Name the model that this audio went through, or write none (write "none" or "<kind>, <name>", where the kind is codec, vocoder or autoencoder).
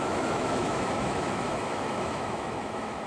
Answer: autoencoder, DAC-VAE